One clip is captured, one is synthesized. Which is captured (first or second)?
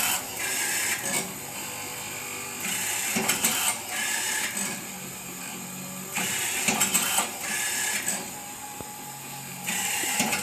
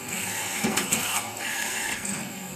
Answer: first